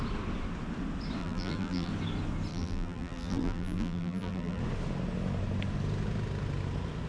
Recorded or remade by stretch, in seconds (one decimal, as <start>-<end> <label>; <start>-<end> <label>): 0.0-1.2 recorded; 1.2-1.9 remade; 1.9-2.5 recorded; 2.5-4.6 remade; 4.6-7.1 recorded